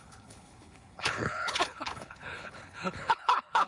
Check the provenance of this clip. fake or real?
fake